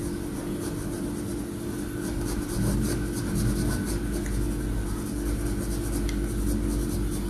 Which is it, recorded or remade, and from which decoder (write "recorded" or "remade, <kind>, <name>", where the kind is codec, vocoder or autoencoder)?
recorded